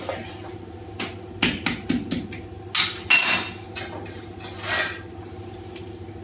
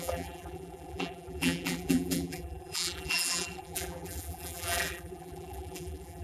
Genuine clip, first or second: first